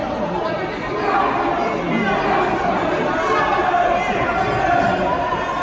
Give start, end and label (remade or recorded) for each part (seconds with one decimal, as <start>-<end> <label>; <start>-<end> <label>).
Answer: 0.0-5.6 recorded